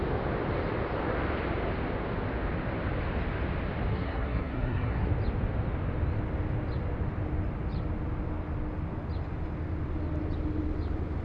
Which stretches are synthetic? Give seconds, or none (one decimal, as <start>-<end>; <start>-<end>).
3.9-5.1